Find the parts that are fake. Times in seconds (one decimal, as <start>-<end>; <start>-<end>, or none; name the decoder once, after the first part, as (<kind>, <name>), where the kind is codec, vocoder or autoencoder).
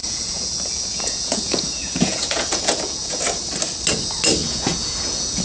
0.0-3.2 (vocoder, Vocos); 4.4-5.4